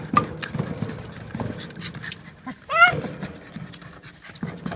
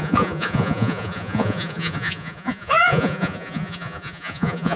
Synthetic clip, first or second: second